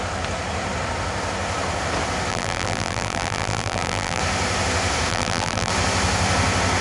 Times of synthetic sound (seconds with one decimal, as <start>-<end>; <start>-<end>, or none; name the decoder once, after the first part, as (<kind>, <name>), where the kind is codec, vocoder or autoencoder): 2.3-4.2 (vocoder, BigVGAN v2); 5.1-5.7